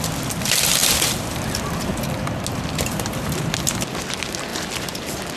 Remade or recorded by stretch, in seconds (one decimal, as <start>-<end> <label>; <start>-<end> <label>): 0.0-5.4 recorded